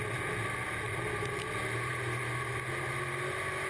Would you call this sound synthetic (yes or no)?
no